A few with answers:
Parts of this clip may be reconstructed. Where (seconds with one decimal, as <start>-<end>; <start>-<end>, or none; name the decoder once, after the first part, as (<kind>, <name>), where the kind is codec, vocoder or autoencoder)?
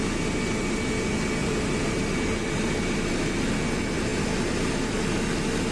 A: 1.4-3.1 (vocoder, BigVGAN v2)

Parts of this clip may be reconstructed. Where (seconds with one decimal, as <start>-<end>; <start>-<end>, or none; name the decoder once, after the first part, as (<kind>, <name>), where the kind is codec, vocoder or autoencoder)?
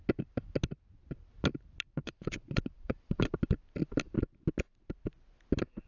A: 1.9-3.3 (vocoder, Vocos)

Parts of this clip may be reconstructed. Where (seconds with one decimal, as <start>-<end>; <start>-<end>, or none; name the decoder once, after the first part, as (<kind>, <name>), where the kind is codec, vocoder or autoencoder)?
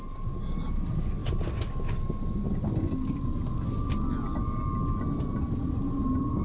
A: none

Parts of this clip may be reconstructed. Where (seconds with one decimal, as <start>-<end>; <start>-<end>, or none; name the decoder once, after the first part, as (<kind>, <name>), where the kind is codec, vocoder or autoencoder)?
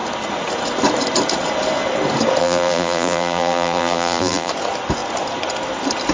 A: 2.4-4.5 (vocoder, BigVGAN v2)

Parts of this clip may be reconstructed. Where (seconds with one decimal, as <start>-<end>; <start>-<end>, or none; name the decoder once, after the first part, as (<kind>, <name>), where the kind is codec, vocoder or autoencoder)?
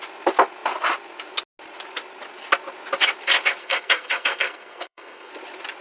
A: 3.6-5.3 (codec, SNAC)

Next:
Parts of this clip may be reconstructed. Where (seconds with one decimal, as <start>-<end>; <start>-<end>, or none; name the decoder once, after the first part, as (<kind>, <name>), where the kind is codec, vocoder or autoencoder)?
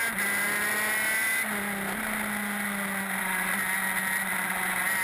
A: none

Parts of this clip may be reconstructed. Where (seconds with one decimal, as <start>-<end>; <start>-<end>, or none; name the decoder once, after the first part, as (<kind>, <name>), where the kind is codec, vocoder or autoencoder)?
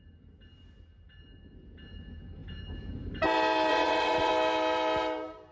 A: 3.7-4.3 (vocoder, WaveNeXt)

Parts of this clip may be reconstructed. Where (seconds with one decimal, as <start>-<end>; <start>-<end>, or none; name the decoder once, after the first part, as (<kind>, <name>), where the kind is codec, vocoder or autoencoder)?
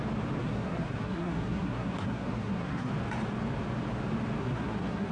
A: 0.4-2.9 (codec, SNAC); 4.4-5.1